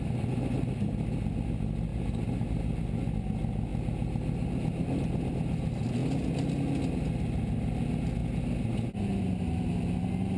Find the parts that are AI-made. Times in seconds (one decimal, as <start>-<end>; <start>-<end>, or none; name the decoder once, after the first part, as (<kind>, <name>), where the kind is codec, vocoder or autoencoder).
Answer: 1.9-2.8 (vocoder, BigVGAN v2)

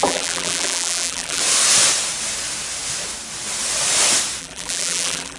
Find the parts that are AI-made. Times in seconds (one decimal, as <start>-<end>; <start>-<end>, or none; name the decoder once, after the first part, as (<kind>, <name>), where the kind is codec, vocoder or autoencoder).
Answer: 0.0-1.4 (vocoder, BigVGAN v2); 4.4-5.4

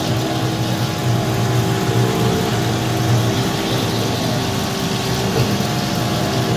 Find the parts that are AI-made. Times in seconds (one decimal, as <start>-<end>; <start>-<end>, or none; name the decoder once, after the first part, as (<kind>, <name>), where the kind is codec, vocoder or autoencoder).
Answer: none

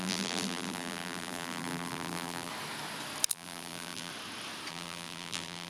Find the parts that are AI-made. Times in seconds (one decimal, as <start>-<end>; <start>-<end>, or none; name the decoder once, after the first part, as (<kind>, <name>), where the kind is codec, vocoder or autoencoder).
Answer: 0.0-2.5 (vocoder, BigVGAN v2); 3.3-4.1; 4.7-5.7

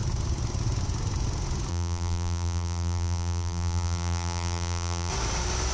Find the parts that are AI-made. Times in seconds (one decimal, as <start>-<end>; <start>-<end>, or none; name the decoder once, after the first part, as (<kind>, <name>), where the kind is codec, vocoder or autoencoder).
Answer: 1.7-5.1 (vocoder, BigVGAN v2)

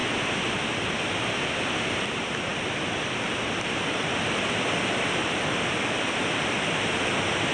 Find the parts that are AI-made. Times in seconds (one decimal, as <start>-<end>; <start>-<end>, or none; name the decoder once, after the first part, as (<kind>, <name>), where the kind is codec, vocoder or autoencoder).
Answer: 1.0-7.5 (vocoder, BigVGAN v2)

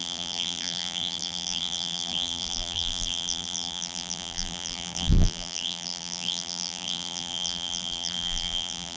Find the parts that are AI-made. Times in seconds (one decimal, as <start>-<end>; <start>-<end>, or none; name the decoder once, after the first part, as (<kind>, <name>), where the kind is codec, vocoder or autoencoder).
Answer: 0.0-9.0 (vocoder, BigVGAN v2)

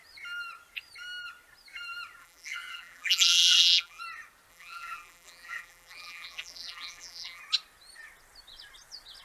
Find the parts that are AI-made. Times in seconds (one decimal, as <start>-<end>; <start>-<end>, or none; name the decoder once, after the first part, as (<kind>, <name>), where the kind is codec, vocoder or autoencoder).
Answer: 2.2-4.0 (vocoder, BigVGAN v2); 4.5-7.4